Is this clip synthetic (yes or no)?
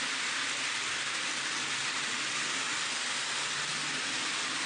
no